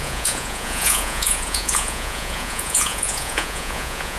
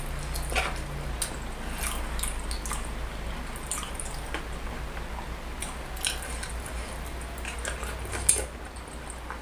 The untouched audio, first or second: second